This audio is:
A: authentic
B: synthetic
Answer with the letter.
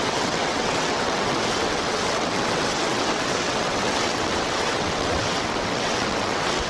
B